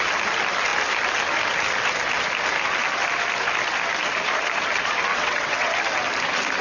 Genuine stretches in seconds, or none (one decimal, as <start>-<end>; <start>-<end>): 0.0-5.1; 5.7-6.6